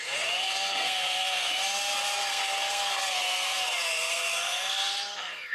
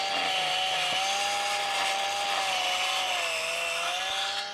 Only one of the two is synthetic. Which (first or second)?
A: first